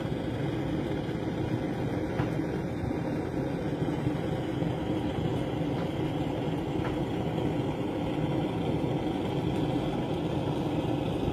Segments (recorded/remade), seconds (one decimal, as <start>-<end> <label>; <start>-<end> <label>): 0.0-11.3 recorded